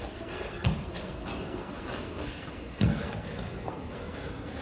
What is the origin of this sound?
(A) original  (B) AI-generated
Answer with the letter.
B